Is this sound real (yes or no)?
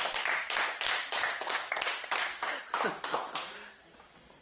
yes